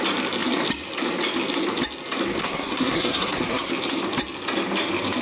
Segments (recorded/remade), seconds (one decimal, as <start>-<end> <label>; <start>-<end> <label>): 0.0-2.4 recorded; 2.4-3.7 remade; 3.7-5.2 recorded